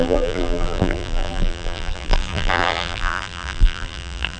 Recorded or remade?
remade